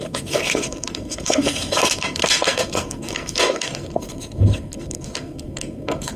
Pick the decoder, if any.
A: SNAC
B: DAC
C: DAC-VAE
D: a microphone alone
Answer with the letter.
A